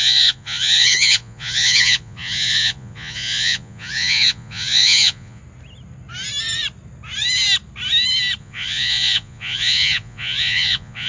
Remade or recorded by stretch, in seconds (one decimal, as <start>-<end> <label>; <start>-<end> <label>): 0.0-5.4 remade; 5.4-8.4 recorded; 8.4-11.1 remade